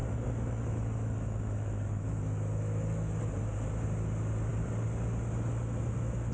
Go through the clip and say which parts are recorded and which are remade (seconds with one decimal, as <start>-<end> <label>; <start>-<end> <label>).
0.0-3.2 remade; 3.2-6.3 recorded